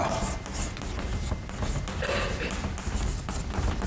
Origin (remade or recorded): recorded